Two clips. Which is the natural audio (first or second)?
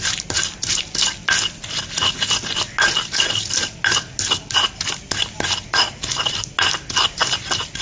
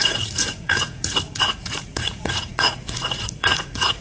first